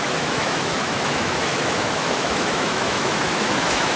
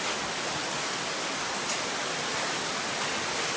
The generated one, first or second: first